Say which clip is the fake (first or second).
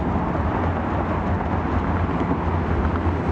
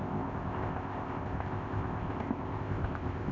second